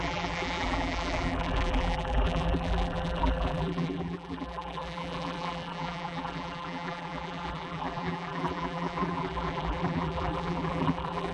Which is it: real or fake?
fake